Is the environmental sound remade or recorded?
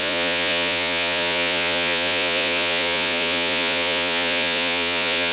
remade